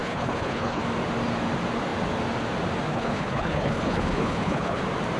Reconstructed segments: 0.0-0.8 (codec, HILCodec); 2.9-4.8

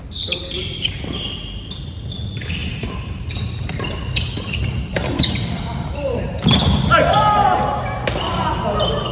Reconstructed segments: 2.6-6.4 (vocoder, BigVGAN v2)

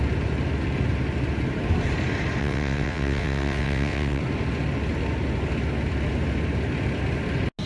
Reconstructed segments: 2.4-4.2 (vocoder, WaveNeXt)

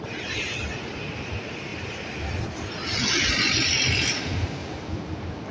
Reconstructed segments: 4.6-5.5 (vocoder, BigVGAN v2)

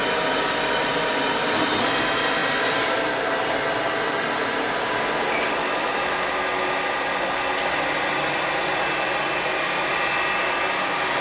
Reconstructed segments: 5.6-6.3 (autoencoder, DAC-VAE)